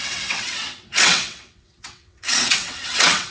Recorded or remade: remade